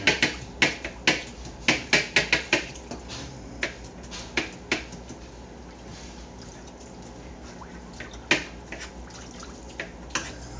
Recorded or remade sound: recorded